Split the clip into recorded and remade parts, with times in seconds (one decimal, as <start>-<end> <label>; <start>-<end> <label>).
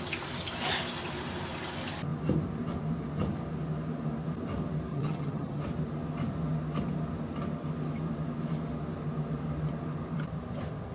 0.0-4.9 recorded; 4.9-5.6 remade; 5.6-10.9 recorded